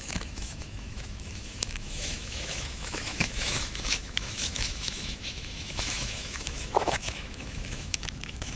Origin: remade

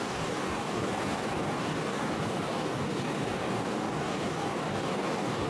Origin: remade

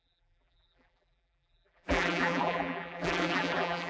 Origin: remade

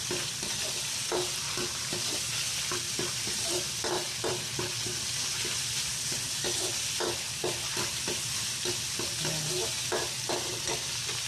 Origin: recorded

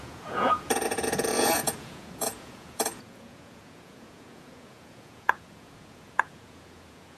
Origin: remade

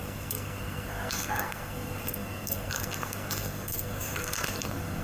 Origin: remade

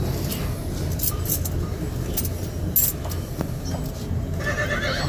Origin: recorded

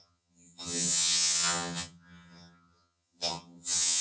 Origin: remade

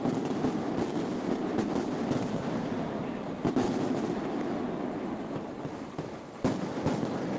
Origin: recorded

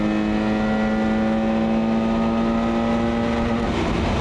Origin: recorded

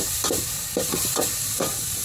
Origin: recorded